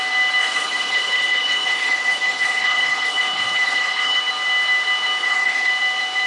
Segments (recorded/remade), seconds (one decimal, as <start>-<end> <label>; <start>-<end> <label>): 0.0-0.4 recorded; 0.4-4.2 remade; 4.2-5.2 recorded; 5.2-5.7 remade; 5.7-6.3 recorded